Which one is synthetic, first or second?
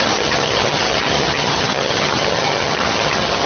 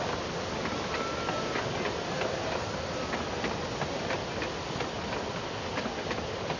first